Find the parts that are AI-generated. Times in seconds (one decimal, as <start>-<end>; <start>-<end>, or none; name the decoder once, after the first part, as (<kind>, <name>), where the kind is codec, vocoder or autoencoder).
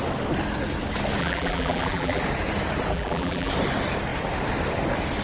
1.2-2.2 (vocoder, BigVGAN v2); 2.9-3.5